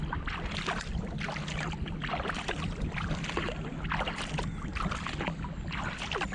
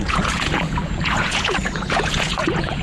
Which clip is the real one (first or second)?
first